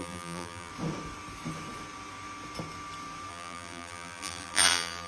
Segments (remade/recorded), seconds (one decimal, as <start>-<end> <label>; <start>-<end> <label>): 0.0-0.7 remade; 0.7-3.3 recorded; 3.3-5.1 remade